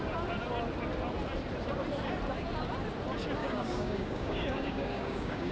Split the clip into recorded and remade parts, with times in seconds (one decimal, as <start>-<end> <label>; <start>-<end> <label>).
0.0-3.4 recorded; 3.4-5.5 remade